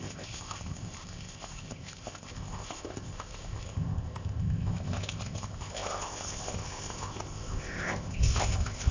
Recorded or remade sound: remade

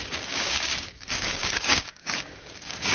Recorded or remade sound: remade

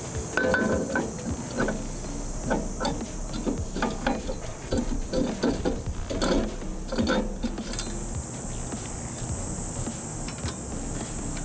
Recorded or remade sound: recorded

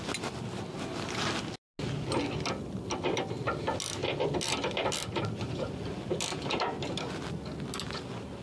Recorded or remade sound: recorded